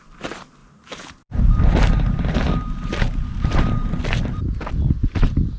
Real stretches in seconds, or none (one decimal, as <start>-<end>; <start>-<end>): 0.0-0.6; 4.0-5.6